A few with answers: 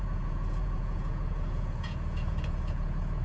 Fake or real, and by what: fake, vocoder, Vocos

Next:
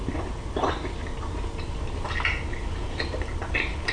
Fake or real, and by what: real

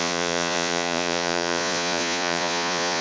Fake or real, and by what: fake, vocoder, Vocos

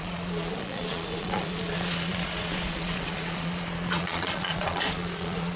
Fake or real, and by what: fake, vocoder, Vocos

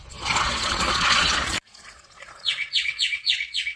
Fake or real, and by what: fake, vocoder, Vocos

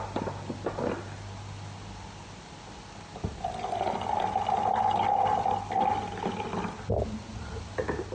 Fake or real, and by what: real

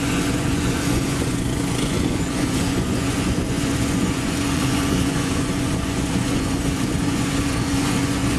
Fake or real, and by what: fake, vocoder, Vocos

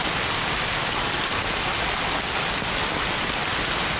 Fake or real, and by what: real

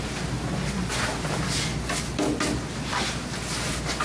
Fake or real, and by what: real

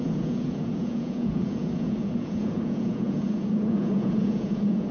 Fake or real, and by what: fake, vocoder, Vocos